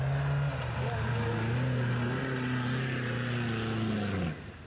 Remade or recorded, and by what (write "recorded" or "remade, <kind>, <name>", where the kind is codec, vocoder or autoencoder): recorded